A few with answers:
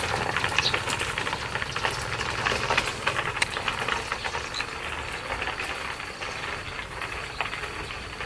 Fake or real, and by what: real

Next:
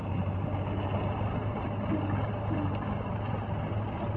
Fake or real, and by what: real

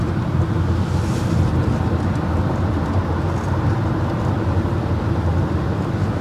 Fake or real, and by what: real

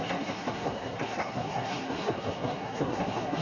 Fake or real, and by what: fake, codec, SNAC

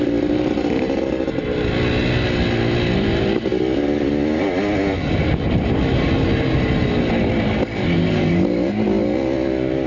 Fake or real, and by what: real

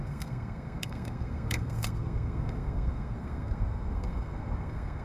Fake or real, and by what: fake, codec, SNAC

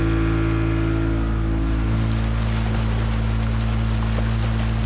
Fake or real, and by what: real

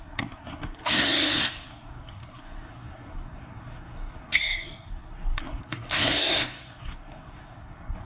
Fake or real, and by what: fake, codec, SNAC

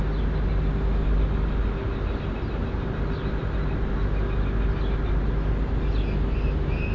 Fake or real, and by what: real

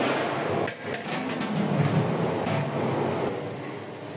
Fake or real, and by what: real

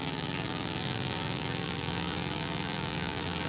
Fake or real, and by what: fake, vocoder, BigVGAN v2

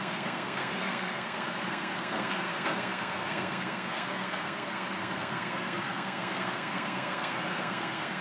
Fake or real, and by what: fake, codec, SNAC